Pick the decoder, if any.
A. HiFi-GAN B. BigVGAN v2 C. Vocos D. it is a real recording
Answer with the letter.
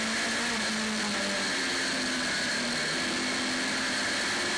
D